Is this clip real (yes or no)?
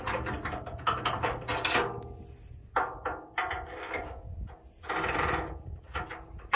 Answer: yes